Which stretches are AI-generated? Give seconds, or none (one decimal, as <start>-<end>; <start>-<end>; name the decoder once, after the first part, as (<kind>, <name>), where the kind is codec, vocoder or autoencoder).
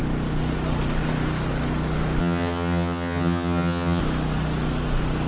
2.2-4.0 (vocoder, HiFi-GAN)